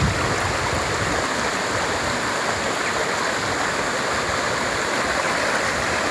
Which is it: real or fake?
real